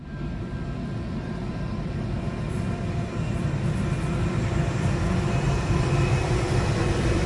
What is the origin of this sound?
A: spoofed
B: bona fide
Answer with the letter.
A